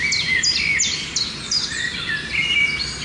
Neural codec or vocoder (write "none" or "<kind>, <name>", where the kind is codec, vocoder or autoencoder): none